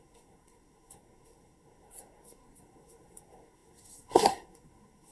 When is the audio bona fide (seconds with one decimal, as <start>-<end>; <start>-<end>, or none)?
none